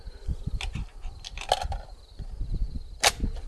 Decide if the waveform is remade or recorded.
recorded